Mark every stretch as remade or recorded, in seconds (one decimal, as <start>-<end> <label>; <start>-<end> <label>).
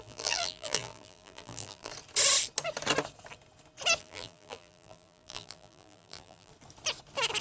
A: 0.0-1.9 remade; 1.9-4.0 recorded; 4.0-6.5 remade; 6.5-7.4 recorded